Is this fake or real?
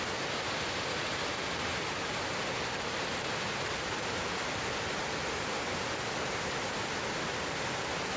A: real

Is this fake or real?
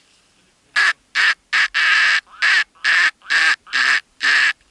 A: real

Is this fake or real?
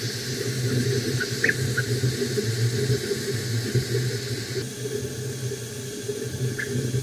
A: real